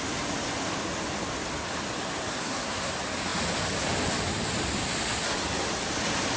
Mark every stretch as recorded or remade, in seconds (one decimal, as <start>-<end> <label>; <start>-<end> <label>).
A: 0.0-2.3 recorded; 2.3-2.9 remade; 2.9-6.4 recorded